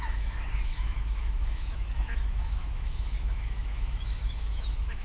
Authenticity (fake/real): fake